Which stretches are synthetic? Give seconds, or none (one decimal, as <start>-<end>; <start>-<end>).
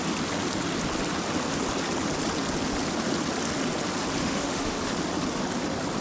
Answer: 4.2-4.8